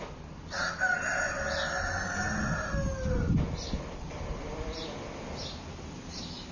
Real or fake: real